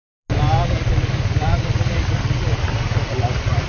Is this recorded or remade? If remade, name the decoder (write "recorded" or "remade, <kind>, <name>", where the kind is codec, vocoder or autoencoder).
recorded